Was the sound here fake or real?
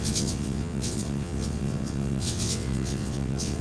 fake